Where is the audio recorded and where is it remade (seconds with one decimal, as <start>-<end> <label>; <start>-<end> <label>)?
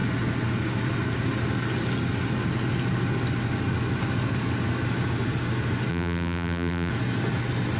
0.0-5.9 recorded; 5.9-6.9 remade; 6.9-7.8 recorded